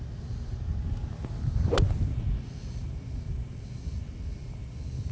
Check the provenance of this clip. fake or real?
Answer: real